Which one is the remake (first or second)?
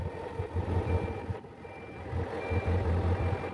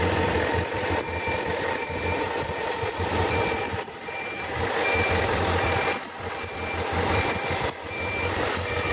second